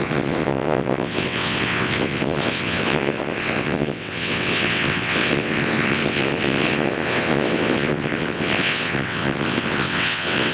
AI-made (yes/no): yes